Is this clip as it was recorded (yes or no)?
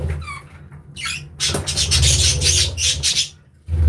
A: yes